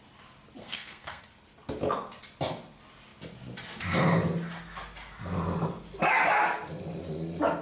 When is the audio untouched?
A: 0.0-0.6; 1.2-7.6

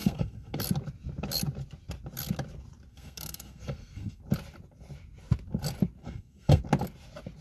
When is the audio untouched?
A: 0.6-2.9; 4.2-6.0; 6.6-7.4

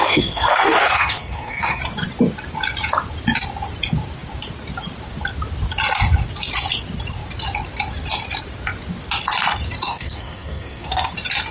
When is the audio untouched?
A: 1.8-9.9; 11.1-11.5

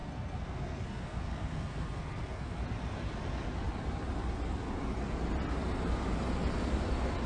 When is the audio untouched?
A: 2.6-7.3

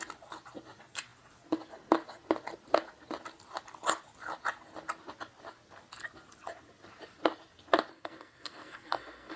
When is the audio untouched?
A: 0.0-7.9

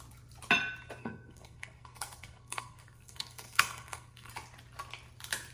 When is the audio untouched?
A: 0.0-1.0; 4.3-5.5

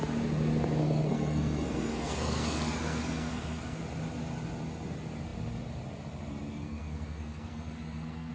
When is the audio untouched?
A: 0.0-0.8; 3.8-6.5

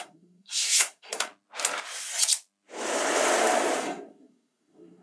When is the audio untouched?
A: 1.3-3.8